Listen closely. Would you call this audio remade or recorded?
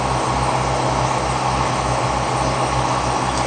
recorded